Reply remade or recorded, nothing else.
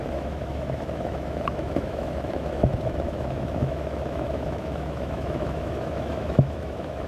remade